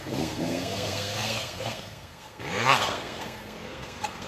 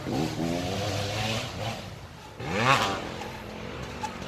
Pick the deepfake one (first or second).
first